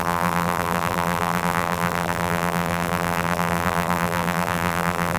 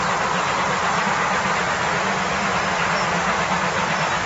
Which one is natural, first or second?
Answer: second